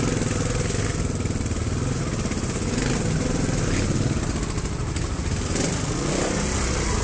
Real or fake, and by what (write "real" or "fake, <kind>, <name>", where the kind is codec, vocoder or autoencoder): real